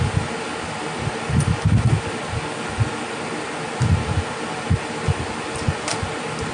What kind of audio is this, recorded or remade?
recorded